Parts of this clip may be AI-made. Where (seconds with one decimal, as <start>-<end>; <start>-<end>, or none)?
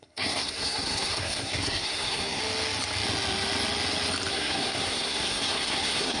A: 0.0-2.4; 4.3-6.2